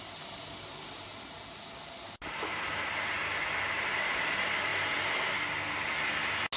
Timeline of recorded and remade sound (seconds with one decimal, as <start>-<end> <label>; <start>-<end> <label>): 0.0-6.6 recorded